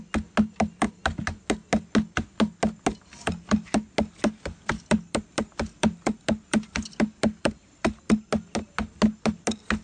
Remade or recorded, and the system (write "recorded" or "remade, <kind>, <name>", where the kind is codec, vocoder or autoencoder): recorded